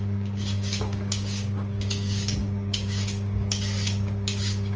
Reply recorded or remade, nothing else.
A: remade